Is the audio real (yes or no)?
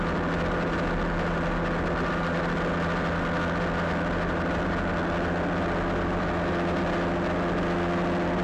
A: yes